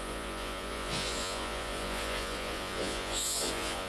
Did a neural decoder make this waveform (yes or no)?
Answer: yes